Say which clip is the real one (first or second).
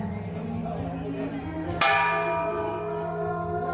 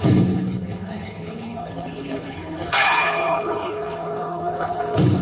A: first